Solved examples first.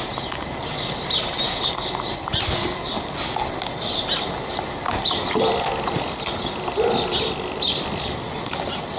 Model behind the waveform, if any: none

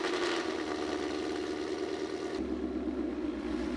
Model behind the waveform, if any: none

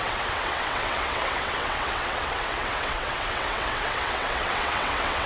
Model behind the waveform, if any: vocoder, WaveNeXt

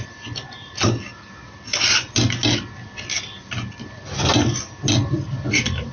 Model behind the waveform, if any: none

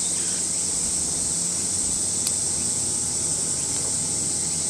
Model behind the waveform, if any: none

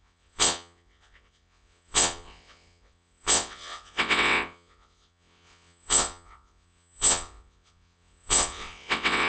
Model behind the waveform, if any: vocoder, WaveNeXt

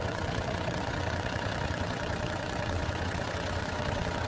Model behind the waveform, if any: vocoder, WaveNeXt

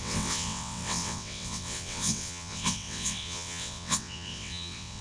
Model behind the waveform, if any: vocoder, WaveNeXt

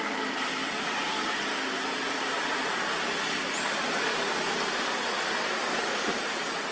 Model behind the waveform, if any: none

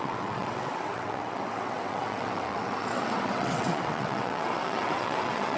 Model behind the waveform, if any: vocoder, WaveNeXt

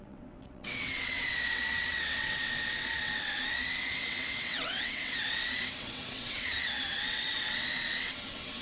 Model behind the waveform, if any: vocoder, WaveNeXt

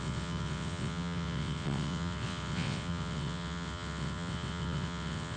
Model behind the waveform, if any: vocoder, WaveNeXt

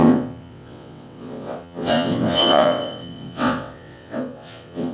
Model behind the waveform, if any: vocoder, WaveNeXt